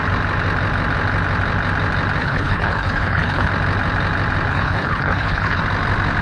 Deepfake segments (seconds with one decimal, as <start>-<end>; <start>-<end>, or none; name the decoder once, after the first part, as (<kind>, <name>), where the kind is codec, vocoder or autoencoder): 2.2-3.5 (codec, HILCodec); 4.5-5.6

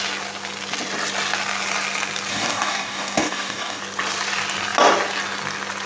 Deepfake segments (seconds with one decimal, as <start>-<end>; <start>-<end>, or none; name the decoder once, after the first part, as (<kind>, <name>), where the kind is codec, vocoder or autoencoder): 2.3-3.8 (codec, DAC)

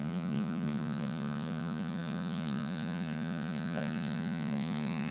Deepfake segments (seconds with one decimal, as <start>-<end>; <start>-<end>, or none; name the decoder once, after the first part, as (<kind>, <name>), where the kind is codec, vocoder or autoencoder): 0.0-5.1 (vocoder, Vocos)

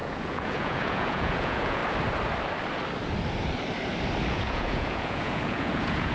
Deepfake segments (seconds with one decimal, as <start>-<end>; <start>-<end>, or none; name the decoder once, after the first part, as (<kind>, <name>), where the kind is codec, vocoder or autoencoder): 0.0-1.8 (vocoder, Vocos); 4.3-6.1

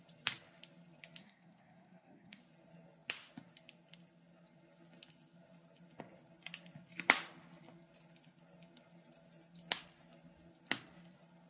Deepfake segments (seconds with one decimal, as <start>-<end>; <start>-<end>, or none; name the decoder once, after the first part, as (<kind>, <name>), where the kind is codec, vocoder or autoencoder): 1.2-2.4 (codec, SNAC)